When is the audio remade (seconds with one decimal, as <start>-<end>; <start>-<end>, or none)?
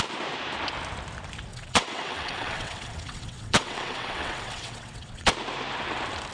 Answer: 1.5-5.3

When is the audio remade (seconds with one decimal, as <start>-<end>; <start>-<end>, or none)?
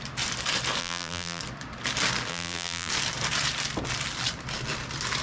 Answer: 0.8-1.4; 2.3-2.9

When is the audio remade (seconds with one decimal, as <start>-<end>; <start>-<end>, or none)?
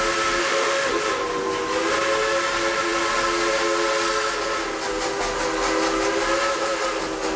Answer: 0.4-0.9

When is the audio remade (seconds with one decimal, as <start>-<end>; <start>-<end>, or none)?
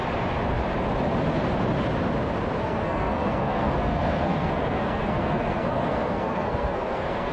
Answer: 2.6-7.3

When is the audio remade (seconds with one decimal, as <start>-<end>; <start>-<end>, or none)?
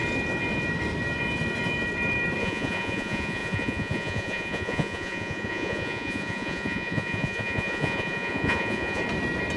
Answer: 2.4-9.0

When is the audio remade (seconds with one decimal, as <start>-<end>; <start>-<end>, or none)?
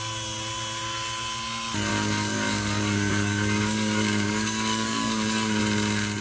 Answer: 1.9-5.6